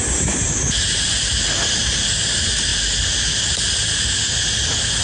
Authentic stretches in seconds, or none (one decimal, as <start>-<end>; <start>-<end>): 0.0-5.0